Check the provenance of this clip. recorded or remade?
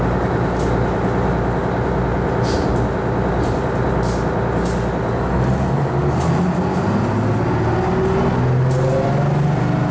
recorded